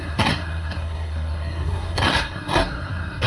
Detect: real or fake fake